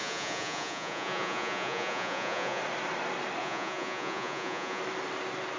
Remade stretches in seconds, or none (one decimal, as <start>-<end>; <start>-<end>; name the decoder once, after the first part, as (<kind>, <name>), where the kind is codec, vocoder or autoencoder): 0.0-2.6 (vocoder, Vocos); 3.4-4.8